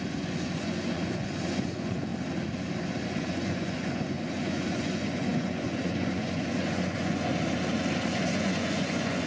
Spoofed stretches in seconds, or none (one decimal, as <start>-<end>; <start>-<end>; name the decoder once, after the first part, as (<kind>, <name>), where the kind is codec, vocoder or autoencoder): 0.0-2.1 (vocoder, Vocos); 2.7-7.3; 8.1-9.3